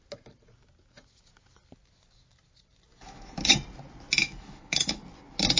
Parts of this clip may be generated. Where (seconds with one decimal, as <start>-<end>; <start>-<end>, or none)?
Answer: 2.9-3.4; 4.2-5.0